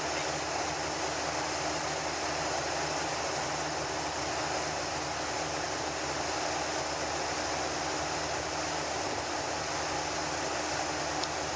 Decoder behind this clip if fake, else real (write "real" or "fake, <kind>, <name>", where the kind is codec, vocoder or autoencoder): real